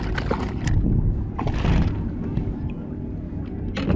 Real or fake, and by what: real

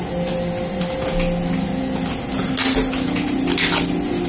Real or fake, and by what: real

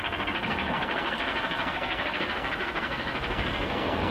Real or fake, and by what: fake, codec, SNAC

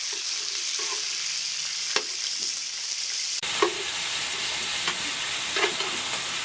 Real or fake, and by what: real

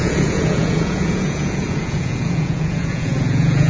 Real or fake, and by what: fake, vocoder, Vocos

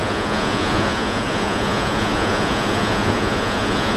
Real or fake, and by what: fake, vocoder, Vocos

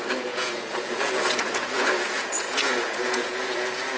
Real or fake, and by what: fake, vocoder, Vocos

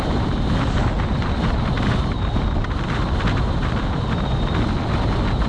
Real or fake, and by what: real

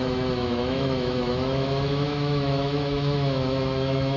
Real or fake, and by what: fake, autoencoder, DAC-VAE